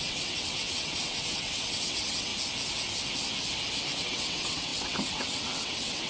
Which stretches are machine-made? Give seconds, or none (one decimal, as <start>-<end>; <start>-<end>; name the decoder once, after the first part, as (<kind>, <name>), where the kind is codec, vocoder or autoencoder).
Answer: 0.0-2.3 (vocoder, WaveNeXt); 4.0-6.1